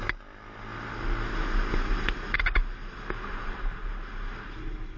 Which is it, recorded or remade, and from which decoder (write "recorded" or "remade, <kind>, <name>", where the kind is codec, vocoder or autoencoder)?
recorded